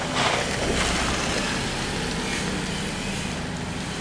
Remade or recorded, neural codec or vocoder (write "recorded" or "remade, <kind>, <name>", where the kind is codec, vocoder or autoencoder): recorded